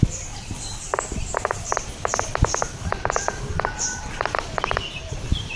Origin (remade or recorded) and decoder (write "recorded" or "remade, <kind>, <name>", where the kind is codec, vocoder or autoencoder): recorded